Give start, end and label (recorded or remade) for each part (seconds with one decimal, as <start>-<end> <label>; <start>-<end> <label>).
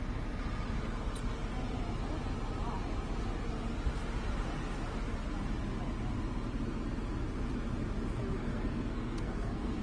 0.0-8.2 recorded; 8.2-9.8 remade